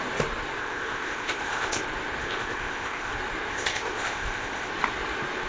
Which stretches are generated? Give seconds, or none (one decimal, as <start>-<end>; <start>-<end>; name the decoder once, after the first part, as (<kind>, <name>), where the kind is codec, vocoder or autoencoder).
0.6-1.8 (codec, ZipCodec); 2.2-3.1; 3.5-4.7